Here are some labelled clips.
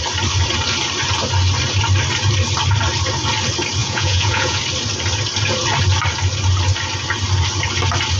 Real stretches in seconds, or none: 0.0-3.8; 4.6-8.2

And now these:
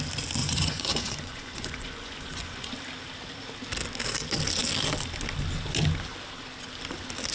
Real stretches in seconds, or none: 0.0-0.4; 2.7-7.3

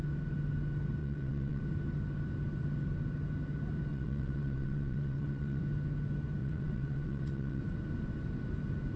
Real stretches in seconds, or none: 0.0-1.0; 1.6-3.9; 5.6-6.4; 7.6-9.0